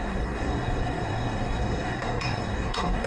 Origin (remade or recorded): remade